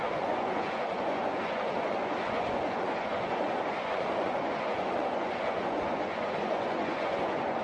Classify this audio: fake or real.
fake